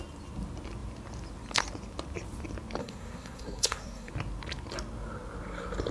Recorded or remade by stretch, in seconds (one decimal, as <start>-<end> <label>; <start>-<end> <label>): 0.0-2.8 recorded; 2.8-4.1 remade; 4.1-5.9 recorded

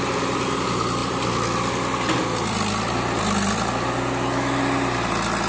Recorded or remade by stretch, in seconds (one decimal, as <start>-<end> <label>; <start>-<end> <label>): 0.0-5.5 recorded

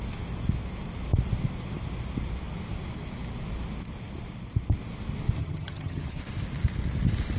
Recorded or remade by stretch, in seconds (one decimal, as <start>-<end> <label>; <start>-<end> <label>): 0.0-5.4 recorded; 5.4-6.2 remade; 6.2-7.4 recorded

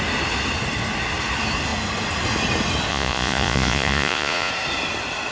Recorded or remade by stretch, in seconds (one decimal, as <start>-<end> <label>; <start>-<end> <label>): 0.0-2.9 recorded; 2.9-4.5 remade; 4.5-5.3 recorded

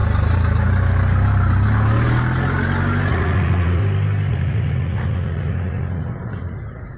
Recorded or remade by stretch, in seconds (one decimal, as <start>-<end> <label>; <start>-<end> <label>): 0.0-3.1 recorded; 3.1-3.8 remade; 3.8-4.3 recorded; 4.3-7.0 remade